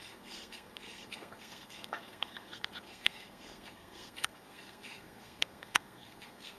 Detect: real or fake fake